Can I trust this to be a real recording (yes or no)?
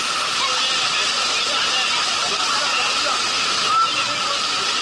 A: yes